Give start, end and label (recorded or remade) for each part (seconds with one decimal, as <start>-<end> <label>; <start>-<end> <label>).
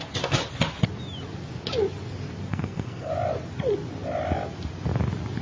0.0-2.5 recorded; 2.5-3.1 remade; 3.1-5.4 recorded